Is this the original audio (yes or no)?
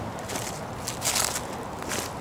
yes